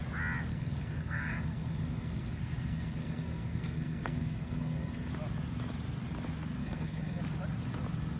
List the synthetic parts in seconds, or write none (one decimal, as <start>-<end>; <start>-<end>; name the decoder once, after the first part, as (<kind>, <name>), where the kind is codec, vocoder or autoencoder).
0.5-5.1 (codec, SNAC); 6.6-7.2

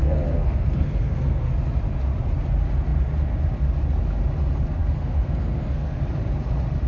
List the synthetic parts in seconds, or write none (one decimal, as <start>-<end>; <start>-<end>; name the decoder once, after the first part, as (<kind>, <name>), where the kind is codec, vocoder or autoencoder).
0.0-1.5 (codec, SNAC); 4.8-6.0